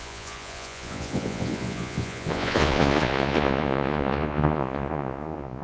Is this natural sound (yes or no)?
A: no